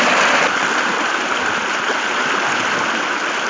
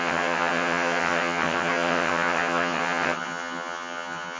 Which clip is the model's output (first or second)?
second